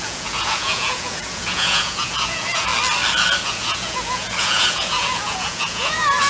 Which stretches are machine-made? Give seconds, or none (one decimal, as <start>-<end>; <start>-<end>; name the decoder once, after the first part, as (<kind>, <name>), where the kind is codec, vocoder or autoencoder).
0.0-2.7 (vocoder, Vocos); 3.4-6.3